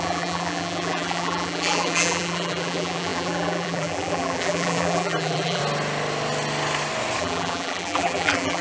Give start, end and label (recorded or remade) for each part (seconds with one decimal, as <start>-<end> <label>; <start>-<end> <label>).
0.0-5.6 remade; 5.6-7.2 recorded; 7.2-8.6 remade